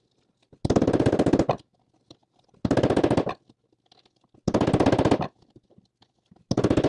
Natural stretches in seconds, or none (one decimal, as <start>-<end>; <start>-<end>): 0.0-6.9